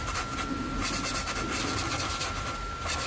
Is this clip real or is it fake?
real